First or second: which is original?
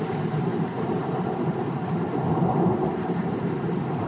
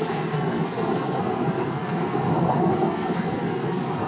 first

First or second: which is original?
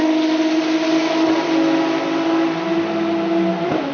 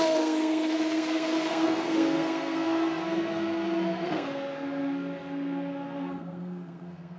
first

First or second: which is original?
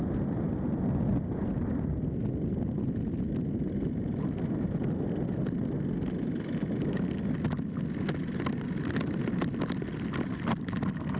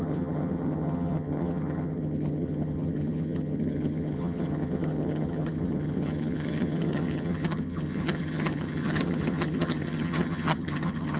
first